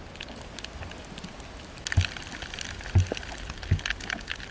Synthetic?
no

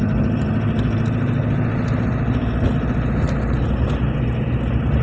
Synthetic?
no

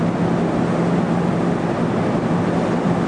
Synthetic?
no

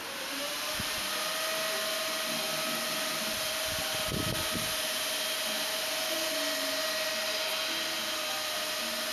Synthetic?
no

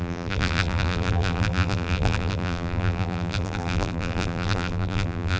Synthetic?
yes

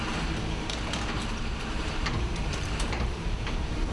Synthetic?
yes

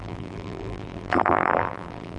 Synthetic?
yes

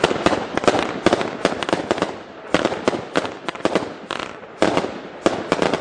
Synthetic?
no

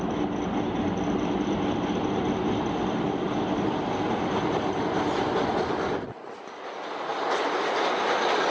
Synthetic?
no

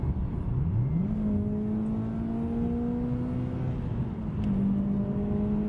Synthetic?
no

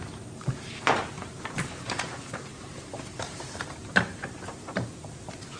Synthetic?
yes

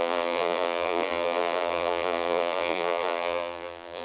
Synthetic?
yes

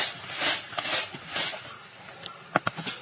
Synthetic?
no